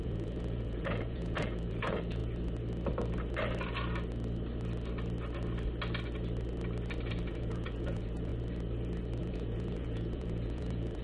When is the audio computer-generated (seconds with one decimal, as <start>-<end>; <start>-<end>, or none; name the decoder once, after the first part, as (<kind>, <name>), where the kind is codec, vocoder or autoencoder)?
0.0-2.2 (vocoder, Vocos); 7.1-8.3; 9.2-11.0